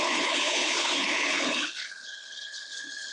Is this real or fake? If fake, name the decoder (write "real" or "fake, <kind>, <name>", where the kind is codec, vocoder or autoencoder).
fake, codec, HILCodec